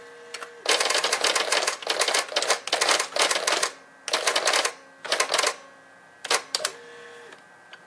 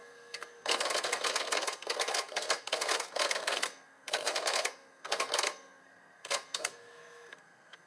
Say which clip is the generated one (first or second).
second